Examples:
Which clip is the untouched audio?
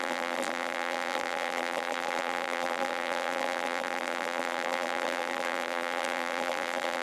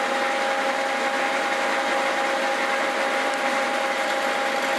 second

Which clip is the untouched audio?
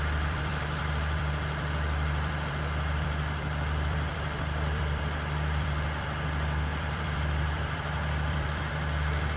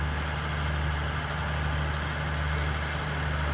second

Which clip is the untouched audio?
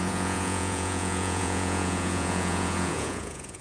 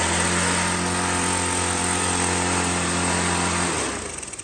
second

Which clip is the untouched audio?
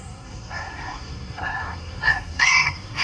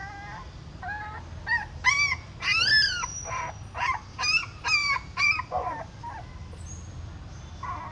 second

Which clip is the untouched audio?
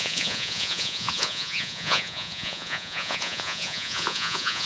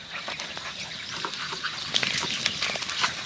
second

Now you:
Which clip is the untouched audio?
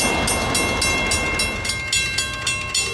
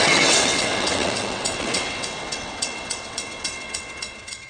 first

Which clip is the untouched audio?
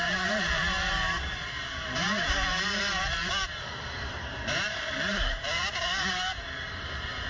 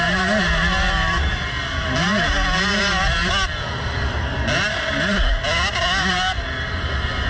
second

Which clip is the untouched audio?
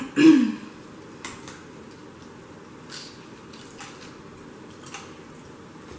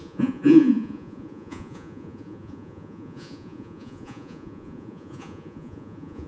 first